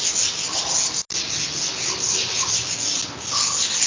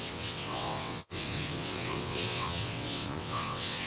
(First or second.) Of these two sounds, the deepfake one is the second